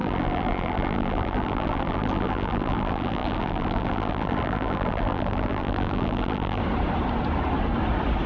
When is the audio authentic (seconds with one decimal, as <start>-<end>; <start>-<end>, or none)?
6.6-8.3